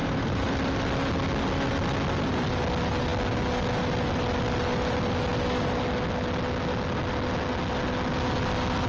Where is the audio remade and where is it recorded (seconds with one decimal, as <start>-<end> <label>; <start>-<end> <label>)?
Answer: 0.0-0.5 remade; 0.5-8.9 recorded